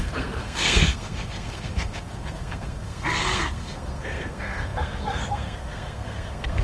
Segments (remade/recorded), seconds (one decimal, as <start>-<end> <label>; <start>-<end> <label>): 0.0-6.6 remade